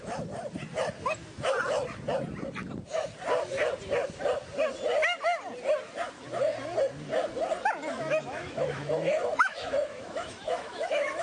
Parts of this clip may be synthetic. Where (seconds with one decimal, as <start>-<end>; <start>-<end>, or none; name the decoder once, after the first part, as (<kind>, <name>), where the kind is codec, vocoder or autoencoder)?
7.9-11.2 (autoencoder, DAC-VAE)